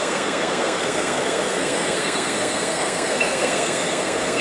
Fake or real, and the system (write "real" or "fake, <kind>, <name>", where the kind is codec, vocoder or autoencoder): fake, codec, SNAC